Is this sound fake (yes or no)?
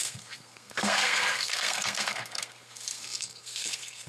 yes